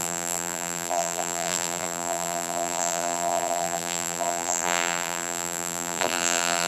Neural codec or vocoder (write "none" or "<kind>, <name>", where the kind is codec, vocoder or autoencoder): vocoder, BigVGAN v2